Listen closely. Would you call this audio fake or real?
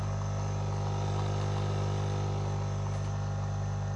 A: real